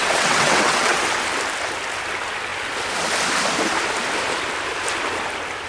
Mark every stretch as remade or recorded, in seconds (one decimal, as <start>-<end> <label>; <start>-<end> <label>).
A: 0.0-1.0 remade; 1.0-5.7 recorded